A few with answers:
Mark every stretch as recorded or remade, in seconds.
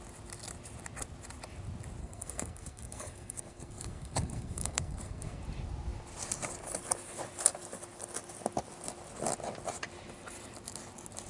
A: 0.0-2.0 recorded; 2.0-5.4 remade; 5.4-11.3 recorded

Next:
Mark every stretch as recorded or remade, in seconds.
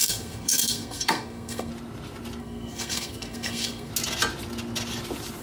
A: 0.0-1.7 remade; 1.7-2.4 recorded; 2.4-3.9 remade; 3.9-5.4 recorded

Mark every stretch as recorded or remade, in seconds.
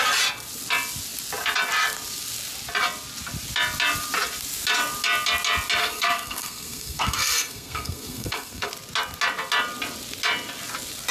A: 0.0-5.8 recorded; 5.8-8.7 remade; 8.7-11.1 recorded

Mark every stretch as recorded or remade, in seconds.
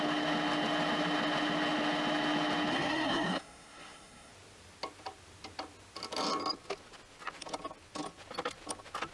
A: 0.0-2.7 recorded; 2.7-4.3 remade; 4.3-9.1 recorded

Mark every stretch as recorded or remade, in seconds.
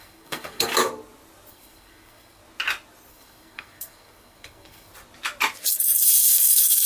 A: 0.0-0.7 remade; 0.7-1.5 recorded; 1.5-2.4 remade; 2.4-3.1 recorded; 3.1-4.9 remade; 4.9-5.6 recorded; 5.6-6.9 remade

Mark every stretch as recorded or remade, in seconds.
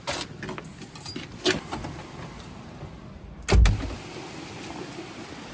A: 0.0-5.5 recorded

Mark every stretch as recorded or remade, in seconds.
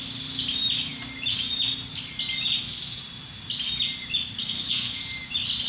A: 0.0-4.4 recorded; 4.4-5.0 remade; 5.0-5.7 recorded